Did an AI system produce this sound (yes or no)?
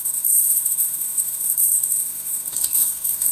yes